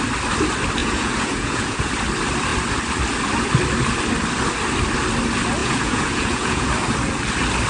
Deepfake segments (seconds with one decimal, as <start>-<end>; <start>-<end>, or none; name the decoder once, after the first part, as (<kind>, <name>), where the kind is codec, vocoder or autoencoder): 0.8-1.9 (vocoder, Vocos); 5.6-6.7